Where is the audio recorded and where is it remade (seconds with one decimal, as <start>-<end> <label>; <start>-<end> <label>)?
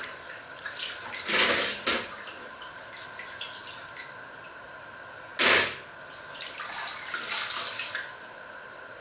0.0-3.6 remade; 3.6-6.3 recorded; 6.3-9.0 remade